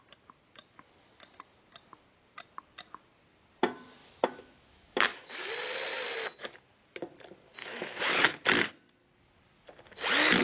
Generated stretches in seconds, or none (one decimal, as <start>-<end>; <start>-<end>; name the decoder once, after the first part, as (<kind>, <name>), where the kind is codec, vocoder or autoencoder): 4.0-5.5 (autoencoder, DAC-VAE); 7.6-8.2